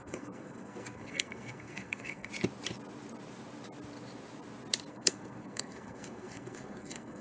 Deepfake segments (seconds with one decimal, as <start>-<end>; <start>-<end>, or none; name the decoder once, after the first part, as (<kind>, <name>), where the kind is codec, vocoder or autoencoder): 0.0-2.3 (codec, SNAC); 4.9-7.2